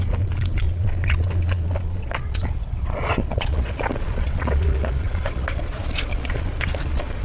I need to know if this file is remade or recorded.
remade